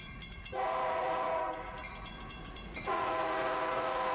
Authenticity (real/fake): fake